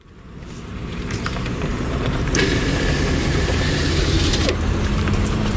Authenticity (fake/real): fake